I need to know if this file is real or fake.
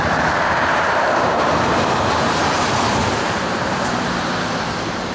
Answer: fake